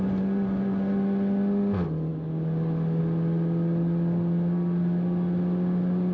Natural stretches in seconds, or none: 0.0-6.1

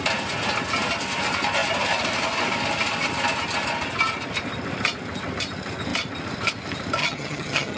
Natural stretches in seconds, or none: 0.0-7.0